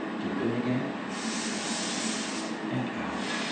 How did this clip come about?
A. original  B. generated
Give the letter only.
A